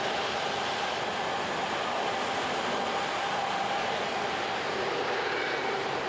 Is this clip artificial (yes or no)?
no